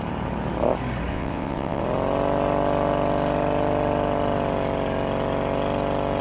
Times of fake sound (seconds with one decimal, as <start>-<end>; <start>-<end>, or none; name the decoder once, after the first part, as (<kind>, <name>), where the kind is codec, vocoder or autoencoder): 1.1-1.8 (vocoder, WaveNeXt)